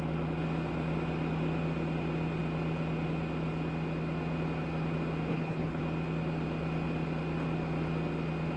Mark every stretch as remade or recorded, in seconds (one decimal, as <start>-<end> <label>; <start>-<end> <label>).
0.0-5.3 recorded; 5.3-5.8 remade; 5.8-8.6 recorded